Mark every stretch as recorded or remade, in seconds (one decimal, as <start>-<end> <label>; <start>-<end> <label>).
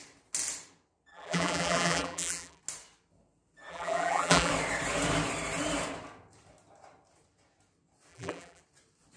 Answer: 0.0-1.1 recorded; 1.1-2.6 remade; 2.6-3.7 recorded; 3.7-4.5 remade; 4.5-8.1 recorded; 8.1-8.6 remade; 8.6-9.2 recorded